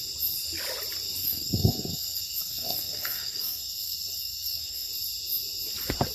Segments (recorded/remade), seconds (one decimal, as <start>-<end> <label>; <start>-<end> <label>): 0.0-1.2 recorded; 1.2-4.9 remade; 4.9-6.1 recorded